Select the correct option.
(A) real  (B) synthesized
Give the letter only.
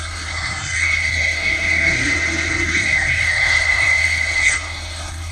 B